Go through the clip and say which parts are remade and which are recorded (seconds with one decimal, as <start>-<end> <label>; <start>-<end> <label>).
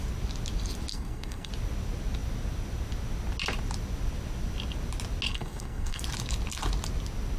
0.0-0.9 recorded; 0.9-1.5 remade; 1.5-5.3 recorded; 5.3-6.0 remade; 6.0-7.4 recorded